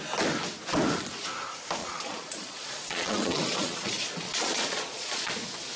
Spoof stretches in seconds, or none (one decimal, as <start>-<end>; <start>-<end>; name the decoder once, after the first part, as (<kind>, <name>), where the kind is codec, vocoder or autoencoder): 1.8-5.3 (vocoder, Vocos)